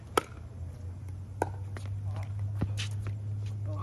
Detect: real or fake real